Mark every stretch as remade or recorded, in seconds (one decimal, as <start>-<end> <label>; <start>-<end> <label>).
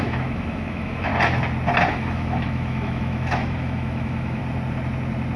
0.0-1.1 remade; 1.1-1.9 recorded; 1.9-4.4 remade; 4.4-5.4 recorded